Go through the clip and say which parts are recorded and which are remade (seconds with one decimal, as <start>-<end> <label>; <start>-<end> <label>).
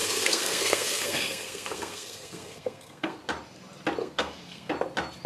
0.0-3.2 remade; 3.2-4.0 recorded; 4.0-4.7 remade; 4.7-5.3 recorded